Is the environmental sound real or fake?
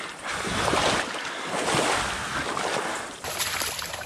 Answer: real